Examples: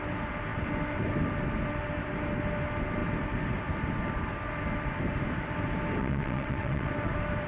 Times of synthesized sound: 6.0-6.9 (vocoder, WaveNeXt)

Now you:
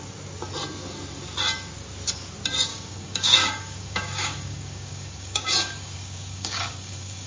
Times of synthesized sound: 2.7-7.3 (codec, DAC)